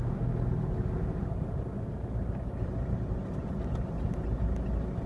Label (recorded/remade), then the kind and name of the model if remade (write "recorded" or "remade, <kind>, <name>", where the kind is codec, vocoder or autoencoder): recorded